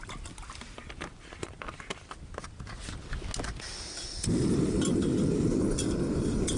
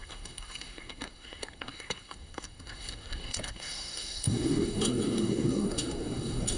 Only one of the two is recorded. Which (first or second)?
first